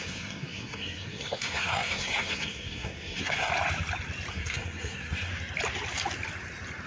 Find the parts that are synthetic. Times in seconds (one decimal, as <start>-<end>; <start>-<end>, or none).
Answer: 0.0-3.5; 4.3-5.3